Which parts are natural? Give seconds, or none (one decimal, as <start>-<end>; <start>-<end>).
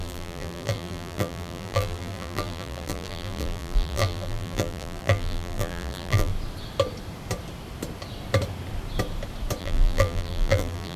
6.3-9.6